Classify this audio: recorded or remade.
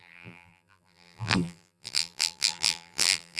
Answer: remade